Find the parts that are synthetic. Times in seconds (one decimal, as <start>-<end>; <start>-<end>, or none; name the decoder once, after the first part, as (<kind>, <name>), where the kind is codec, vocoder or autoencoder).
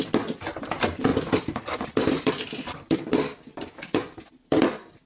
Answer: 1.1-4.2 (vocoder, BigVGAN v2)